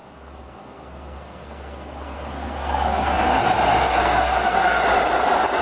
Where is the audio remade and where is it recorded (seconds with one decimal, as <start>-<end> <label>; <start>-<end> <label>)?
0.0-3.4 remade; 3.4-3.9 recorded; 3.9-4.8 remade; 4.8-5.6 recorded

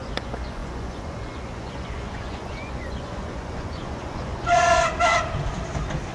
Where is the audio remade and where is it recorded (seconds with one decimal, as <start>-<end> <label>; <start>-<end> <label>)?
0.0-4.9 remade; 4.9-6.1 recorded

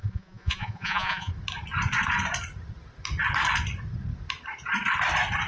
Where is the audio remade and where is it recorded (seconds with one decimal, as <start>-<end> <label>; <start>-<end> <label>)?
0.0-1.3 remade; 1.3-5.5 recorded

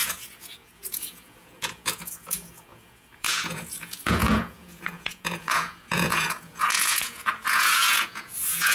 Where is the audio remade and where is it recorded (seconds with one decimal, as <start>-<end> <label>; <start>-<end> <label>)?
0.0-8.7 remade